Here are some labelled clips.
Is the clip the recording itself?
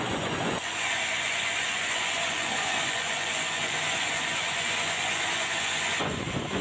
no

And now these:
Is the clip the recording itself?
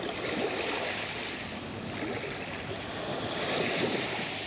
yes